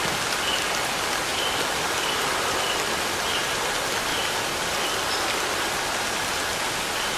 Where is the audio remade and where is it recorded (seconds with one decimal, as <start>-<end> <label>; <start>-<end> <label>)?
0.0-1.3 recorded; 1.3-2.6 remade; 2.6-4.1 recorded; 4.1-5.1 remade; 5.1-7.2 recorded